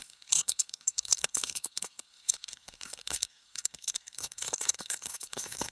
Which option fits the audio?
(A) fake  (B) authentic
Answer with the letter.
A